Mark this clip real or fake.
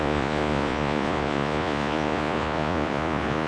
fake